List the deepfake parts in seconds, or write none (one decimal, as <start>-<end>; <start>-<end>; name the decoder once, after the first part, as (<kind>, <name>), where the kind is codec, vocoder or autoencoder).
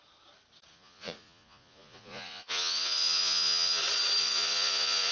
0.7-3.8 (vocoder, Vocos); 4.2-5.1